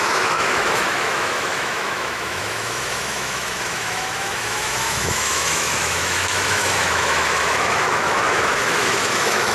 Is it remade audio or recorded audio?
remade